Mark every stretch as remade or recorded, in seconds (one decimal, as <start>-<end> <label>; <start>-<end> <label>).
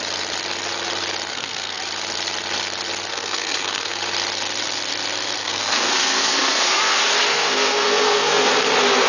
0.0-1.3 recorded; 1.3-1.8 remade; 1.8-3.1 recorded; 3.1-4.0 remade; 4.0-5.4 recorded; 5.4-6.8 remade; 6.8-7.3 recorded; 7.3-8.5 remade; 8.5-9.1 recorded